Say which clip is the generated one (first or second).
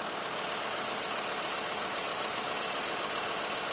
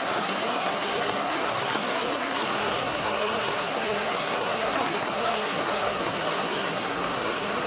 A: second